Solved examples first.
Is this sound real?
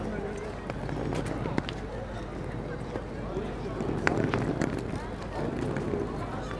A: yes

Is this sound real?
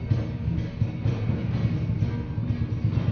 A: yes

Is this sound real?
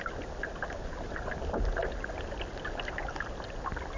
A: yes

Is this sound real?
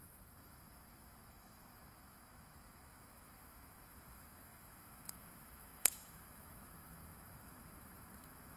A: no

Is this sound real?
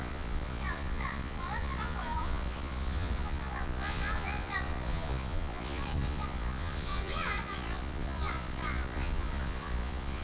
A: no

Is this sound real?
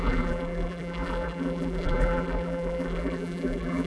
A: no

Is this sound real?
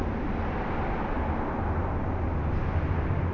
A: yes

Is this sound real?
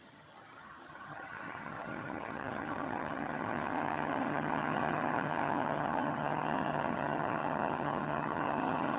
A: no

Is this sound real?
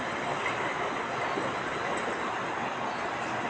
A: yes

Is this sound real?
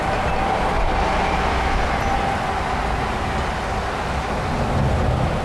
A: yes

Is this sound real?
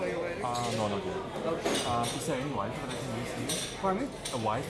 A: yes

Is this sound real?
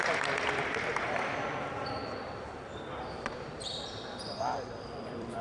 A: no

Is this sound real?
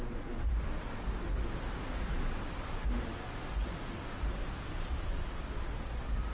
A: yes